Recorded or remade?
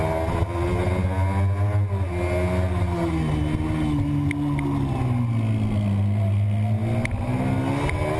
recorded